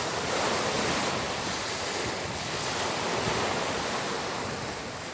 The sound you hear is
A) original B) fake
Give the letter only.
A